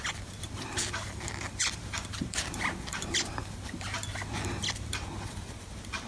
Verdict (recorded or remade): remade